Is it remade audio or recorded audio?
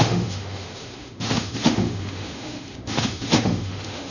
remade